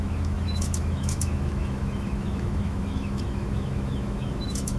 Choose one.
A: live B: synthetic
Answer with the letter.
B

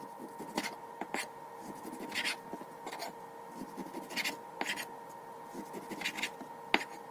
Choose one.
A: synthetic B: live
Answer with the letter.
B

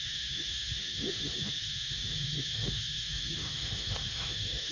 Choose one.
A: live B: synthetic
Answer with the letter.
B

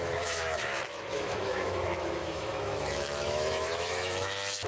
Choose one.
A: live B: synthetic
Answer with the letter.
B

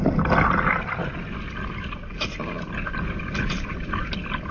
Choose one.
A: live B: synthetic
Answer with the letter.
A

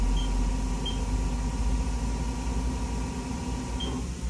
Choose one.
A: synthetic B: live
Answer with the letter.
B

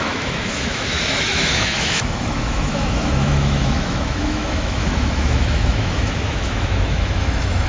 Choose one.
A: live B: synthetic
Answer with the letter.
B